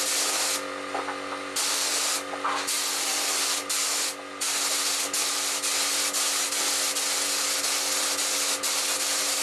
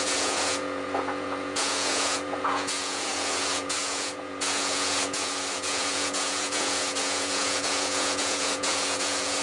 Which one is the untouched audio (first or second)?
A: first